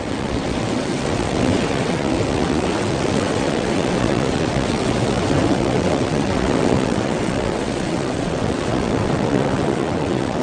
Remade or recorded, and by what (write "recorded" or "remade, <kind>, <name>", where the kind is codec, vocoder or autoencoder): remade, vocoder, WaveNeXt